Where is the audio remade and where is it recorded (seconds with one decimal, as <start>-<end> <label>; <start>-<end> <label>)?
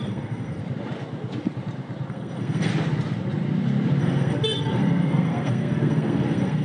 0.0-0.6 remade; 0.6-2.1 recorded; 2.1-2.7 remade; 2.7-4.0 recorded; 4.0-6.6 remade